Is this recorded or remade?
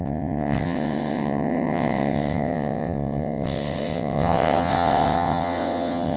remade